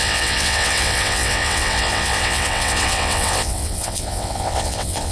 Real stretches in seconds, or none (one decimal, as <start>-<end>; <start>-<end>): none